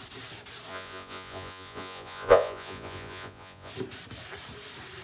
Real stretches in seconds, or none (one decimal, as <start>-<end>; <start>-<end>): 0.0-0.7; 3.7-5.0